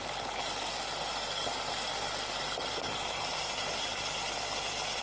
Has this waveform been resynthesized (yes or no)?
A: no